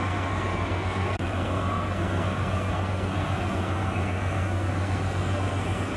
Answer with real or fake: fake